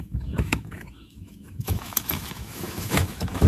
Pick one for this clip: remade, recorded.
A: remade